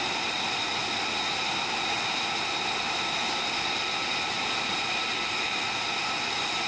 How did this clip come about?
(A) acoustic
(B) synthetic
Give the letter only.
A